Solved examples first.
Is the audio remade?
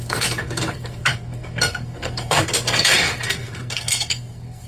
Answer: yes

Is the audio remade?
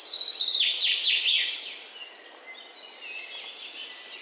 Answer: no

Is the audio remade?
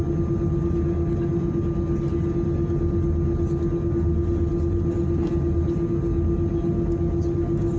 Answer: no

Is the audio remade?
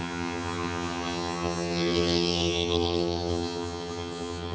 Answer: yes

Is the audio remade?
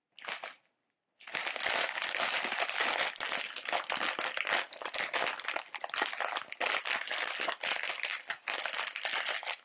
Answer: no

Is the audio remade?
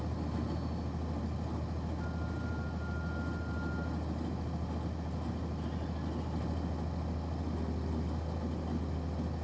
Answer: no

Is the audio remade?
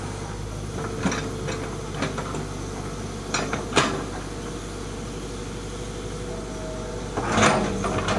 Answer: no